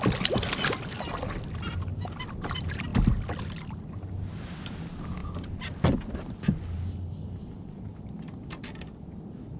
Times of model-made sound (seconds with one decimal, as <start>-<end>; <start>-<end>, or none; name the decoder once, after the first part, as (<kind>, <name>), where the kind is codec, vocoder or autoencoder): none